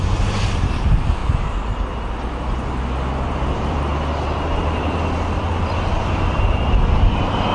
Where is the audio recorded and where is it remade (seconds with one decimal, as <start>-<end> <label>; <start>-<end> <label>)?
0.0-1.2 remade; 1.2-3.3 recorded; 3.3-3.9 remade; 3.9-4.6 recorded; 4.6-7.5 remade